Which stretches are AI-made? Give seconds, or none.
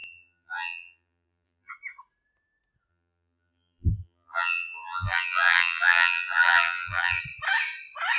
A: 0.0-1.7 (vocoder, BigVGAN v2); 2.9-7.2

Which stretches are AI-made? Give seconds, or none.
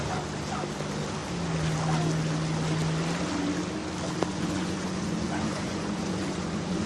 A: 4.3-6.9 (vocoder, Vocos)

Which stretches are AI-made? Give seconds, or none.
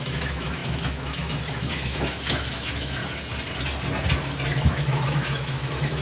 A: 0.0-3.0 (autoencoder, DAC-VAE); 4.5-6.0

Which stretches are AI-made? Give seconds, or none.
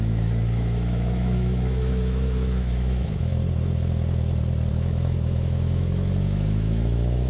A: 0.0-3.3 (autoencoder, DAC-VAE); 4.7-7.3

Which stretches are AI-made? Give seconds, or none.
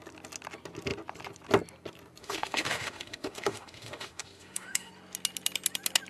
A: 2.2-4.9 (autoencoder, DAC-VAE)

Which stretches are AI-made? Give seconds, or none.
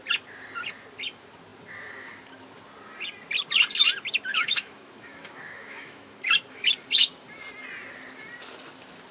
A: 4.3-6.7 (autoencoder, DAC-VAE)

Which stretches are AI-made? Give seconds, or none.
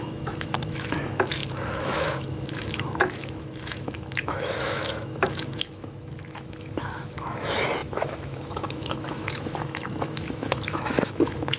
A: 0.0-11.6 (autoencoder, DAC-VAE)